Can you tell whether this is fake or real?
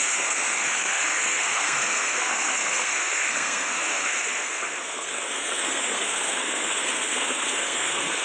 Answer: fake